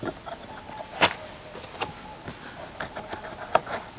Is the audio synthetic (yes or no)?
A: no